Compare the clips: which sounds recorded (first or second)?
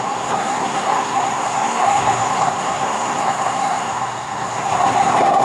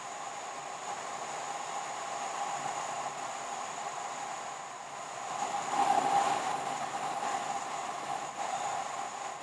second